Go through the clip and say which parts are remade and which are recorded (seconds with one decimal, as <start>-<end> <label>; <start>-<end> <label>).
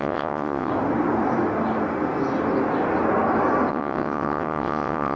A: 0.0-0.7 remade; 0.7-3.7 recorded; 3.7-5.2 remade